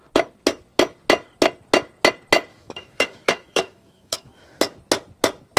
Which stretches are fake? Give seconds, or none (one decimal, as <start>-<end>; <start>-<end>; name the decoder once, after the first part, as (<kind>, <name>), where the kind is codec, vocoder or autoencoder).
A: 2.5-4.6 (autoencoder, DAC-VAE)